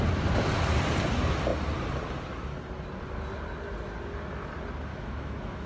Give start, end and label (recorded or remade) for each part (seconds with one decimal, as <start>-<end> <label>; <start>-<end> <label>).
0.0-4.9 recorded; 4.9-5.7 remade